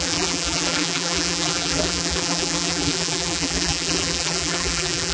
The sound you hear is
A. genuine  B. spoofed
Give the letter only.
B